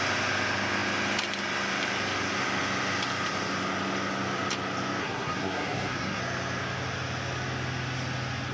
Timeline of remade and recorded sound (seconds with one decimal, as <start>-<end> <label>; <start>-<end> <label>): 0.0-5.0 recorded; 5.0-6.2 remade; 6.2-8.5 recorded

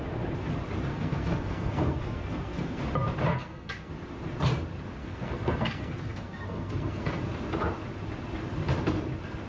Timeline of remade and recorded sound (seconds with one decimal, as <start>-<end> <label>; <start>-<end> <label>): 0.0-0.9 recorded; 0.9-2.8 remade; 2.8-3.3 recorded; 3.3-3.9 remade; 3.9-5.0 recorded; 5.0-7.2 remade; 7.2-9.5 recorded